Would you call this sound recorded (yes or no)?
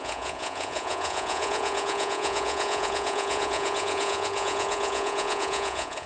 no